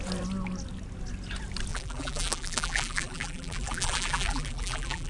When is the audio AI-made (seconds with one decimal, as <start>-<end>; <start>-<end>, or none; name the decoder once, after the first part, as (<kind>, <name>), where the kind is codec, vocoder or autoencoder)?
1.7-5.1 (vocoder, BigVGAN v2)